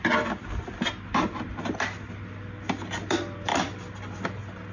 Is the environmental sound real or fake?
real